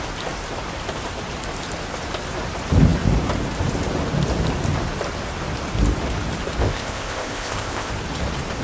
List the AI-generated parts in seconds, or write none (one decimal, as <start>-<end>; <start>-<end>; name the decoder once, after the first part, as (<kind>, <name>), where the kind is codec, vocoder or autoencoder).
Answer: 6.6-7.9 (codec, ZipCodec)